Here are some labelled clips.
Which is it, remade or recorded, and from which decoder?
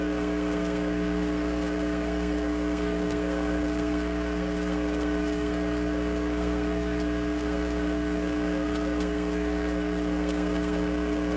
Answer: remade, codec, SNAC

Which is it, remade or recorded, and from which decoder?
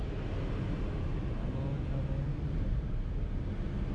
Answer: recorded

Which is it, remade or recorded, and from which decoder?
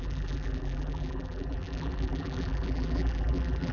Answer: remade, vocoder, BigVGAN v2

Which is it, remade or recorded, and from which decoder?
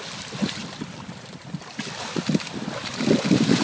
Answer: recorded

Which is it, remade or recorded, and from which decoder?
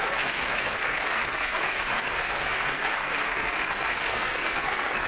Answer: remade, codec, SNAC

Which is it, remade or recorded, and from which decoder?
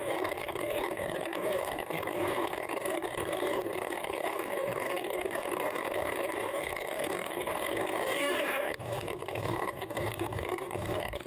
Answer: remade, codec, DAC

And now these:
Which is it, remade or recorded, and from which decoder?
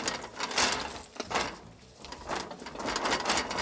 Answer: recorded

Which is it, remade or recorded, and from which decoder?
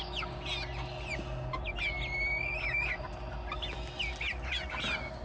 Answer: recorded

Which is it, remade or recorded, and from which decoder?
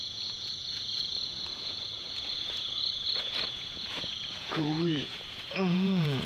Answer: remade, vocoder, Vocos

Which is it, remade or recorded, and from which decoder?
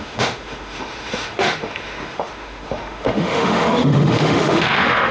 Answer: remade, autoencoder, DAC-VAE